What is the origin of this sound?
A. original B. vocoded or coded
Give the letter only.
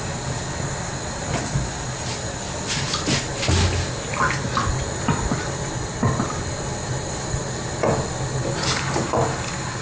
A